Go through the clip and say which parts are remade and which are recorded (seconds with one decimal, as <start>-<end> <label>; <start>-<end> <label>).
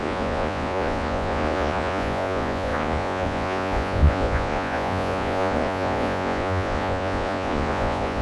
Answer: 0.0-8.2 remade